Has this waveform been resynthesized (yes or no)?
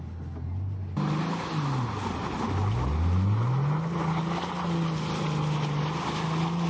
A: no